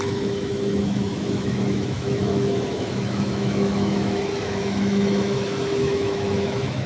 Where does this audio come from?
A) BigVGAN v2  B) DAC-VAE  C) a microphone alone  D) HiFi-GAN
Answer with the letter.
B